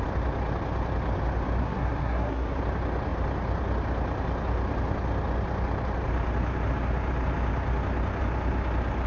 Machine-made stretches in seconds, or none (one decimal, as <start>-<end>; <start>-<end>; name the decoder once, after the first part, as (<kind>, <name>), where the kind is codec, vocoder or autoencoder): 1.6-2.6 (codec, SNAC)